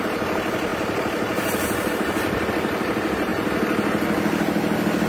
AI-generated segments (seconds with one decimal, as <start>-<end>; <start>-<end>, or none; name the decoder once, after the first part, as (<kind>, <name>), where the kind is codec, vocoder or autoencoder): none